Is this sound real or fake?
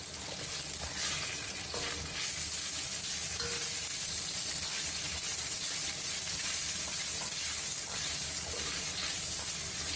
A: real